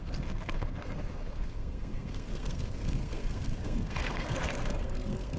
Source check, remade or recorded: remade